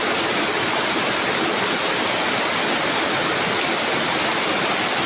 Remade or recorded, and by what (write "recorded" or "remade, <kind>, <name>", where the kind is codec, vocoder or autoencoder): recorded